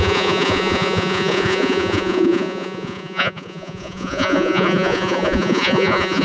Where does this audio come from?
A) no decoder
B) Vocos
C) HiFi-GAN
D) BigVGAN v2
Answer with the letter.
B